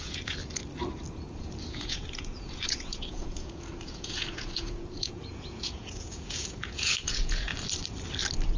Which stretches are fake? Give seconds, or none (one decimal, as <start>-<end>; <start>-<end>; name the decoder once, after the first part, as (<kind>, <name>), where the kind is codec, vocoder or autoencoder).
0.0-0.4 (vocoder, Vocos); 1.7-7.5